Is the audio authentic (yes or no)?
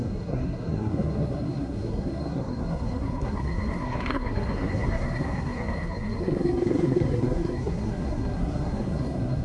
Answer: no